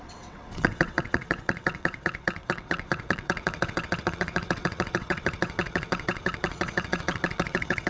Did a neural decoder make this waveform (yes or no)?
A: yes